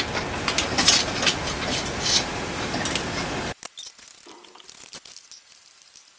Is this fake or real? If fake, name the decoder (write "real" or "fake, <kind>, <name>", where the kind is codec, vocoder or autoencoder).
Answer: real